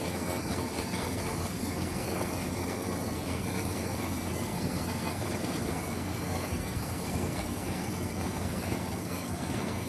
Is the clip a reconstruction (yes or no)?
yes